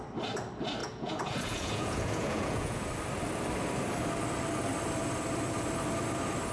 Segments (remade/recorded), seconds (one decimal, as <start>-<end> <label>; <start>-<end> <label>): 0.0-0.8 recorded; 0.8-2.9 remade; 2.9-6.5 recorded